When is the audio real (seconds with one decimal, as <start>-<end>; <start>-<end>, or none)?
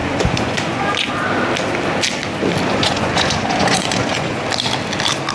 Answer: 1.1-2.7; 4.4-5.3